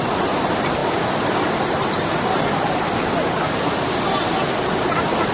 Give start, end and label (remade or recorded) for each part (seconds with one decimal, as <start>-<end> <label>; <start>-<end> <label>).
0.0-5.3 recorded